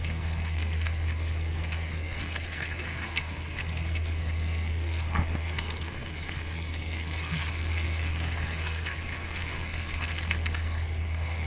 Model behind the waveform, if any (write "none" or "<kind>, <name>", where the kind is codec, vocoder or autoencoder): codec, SNAC